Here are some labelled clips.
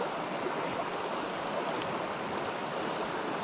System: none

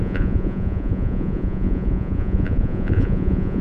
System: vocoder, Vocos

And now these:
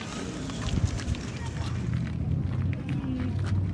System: none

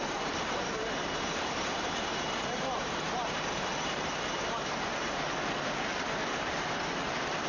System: vocoder, BigVGAN v2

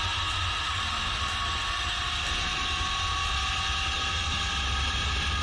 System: none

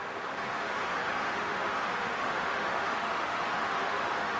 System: autoencoder, DAC-VAE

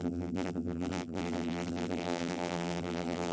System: vocoder, BigVGAN v2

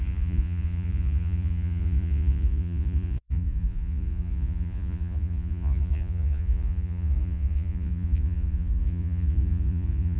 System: vocoder, Vocos